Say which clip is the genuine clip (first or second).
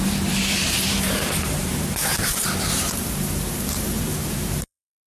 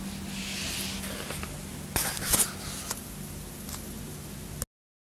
second